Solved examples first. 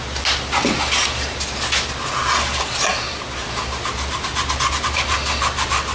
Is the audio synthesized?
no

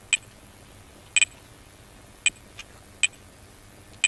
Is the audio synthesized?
no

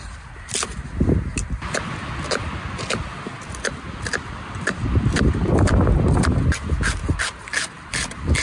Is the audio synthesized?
no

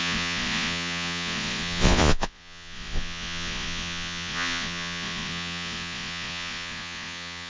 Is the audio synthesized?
yes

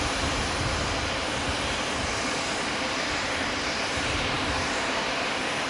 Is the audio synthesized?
no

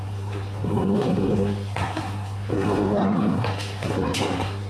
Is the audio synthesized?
yes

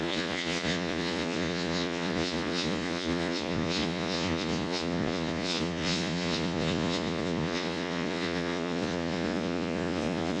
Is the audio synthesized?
yes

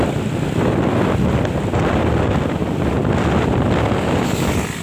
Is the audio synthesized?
no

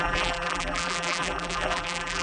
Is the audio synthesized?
yes